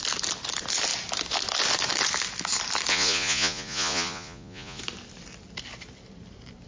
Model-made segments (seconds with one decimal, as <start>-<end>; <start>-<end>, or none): 2.9-4.8